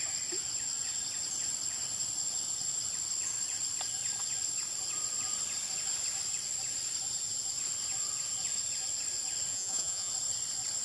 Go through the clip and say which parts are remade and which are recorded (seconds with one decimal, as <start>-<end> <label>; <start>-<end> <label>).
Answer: 0.0-9.5 recorded; 9.5-10.1 remade; 10.1-10.8 recorded